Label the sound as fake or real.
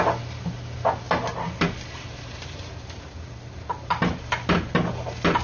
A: real